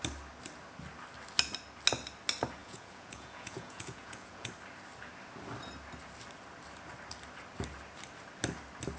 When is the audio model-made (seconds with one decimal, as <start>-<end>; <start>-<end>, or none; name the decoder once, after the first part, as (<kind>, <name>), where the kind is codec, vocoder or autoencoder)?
2.6-4.5 (vocoder, Vocos)